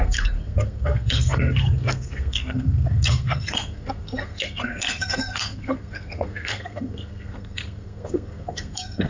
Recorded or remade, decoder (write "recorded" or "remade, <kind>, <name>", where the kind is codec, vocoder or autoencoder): remade, codec, SNAC